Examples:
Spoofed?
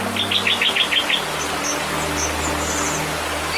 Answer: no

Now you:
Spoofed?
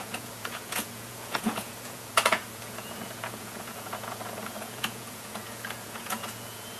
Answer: yes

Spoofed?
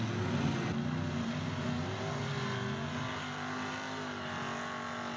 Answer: no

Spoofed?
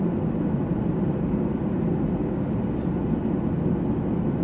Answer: no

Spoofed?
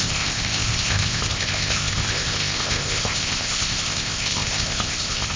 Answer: yes